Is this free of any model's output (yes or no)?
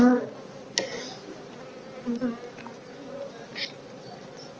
yes